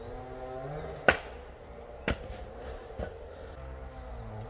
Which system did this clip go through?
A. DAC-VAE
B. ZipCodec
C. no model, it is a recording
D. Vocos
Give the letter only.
C